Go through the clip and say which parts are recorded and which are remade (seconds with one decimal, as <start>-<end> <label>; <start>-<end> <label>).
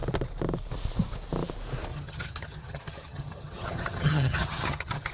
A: 0.0-1.9 recorded; 1.9-5.1 remade